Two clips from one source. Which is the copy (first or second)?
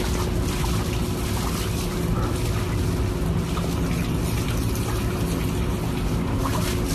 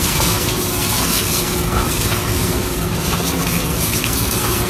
second